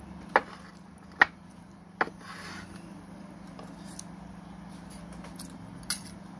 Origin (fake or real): real